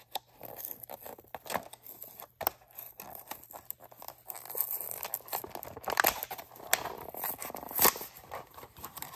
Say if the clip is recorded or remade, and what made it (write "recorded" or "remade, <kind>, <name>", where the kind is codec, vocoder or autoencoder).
recorded